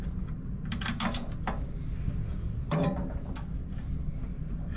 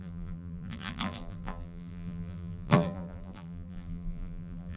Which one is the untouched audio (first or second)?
first